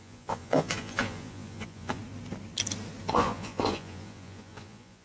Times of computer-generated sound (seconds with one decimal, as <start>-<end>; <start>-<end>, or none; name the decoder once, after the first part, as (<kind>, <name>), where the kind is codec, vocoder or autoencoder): 0.0-2.0 (vocoder, Vocos); 3.1-5.0